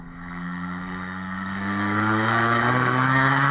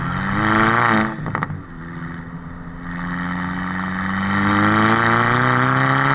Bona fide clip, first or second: second